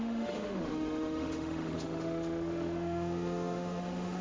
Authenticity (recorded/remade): remade